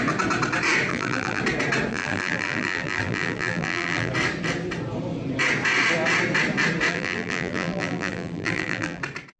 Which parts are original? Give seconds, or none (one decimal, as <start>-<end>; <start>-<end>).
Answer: 0.0-0.9; 1.4-1.9; 4.1-6.9; 9.0-9.4

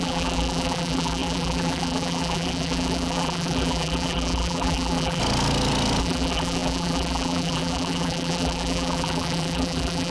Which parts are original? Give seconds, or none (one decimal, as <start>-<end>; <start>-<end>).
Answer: 5.2-6.0

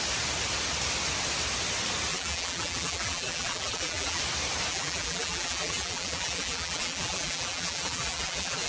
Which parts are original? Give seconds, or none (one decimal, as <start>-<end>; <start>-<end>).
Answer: 0.0-2.1; 4.2-4.7

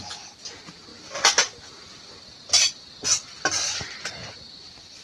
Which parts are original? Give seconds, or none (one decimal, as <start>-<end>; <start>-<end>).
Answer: 0.0-0.9; 2.8-5.0